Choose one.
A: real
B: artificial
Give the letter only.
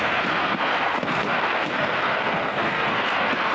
B